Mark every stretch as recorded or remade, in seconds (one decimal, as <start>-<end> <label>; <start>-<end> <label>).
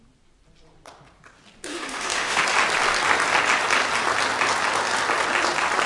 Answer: 0.0-1.7 recorded; 1.7-2.4 remade; 2.4-5.9 recorded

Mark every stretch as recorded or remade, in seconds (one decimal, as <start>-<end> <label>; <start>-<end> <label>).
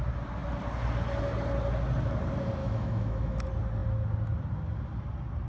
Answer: 0.0-2.6 recorded; 2.6-3.4 remade; 3.4-5.5 recorded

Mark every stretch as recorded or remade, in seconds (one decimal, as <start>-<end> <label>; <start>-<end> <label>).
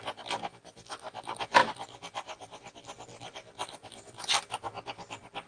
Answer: 0.0-5.5 recorded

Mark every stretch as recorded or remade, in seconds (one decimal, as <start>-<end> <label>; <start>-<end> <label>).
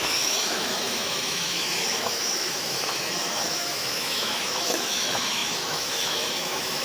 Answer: 0.0-6.8 remade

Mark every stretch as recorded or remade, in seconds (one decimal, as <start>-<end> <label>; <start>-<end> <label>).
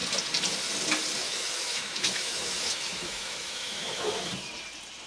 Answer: 0.0-1.2 recorded; 1.2-4.3 remade; 4.3-5.1 recorded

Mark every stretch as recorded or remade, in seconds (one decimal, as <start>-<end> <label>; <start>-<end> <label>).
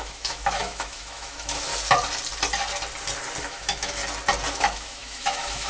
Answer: 0.0-1.7 remade; 1.7-3.4 recorded; 3.4-4.0 remade; 4.0-4.5 recorded; 4.5-5.7 remade